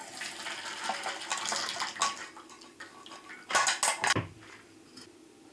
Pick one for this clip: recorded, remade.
recorded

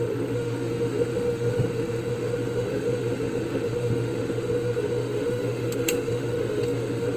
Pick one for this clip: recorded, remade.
remade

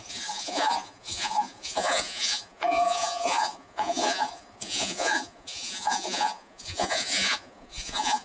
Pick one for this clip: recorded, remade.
remade